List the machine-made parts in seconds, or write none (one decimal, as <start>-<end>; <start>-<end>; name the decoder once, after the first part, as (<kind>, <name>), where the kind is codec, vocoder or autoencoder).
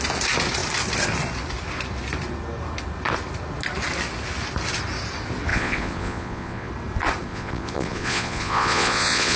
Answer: 5.5-6.7 (vocoder, Vocos); 7.3-9.4